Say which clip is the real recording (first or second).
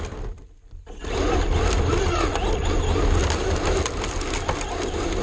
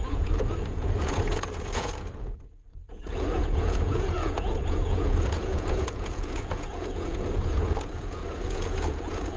first